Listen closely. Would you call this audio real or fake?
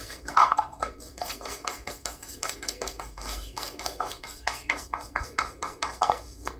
fake